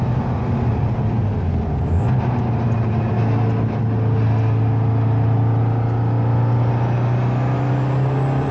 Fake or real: real